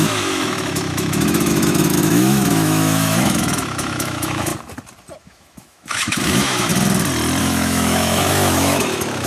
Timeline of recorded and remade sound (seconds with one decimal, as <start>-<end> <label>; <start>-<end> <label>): 0.0-4.5 remade; 4.5-5.2 recorded; 5.2-6.7 remade; 6.7-7.4 recorded; 7.4-9.3 remade